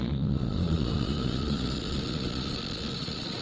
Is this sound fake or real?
fake